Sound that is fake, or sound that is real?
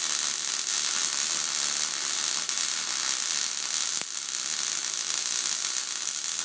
real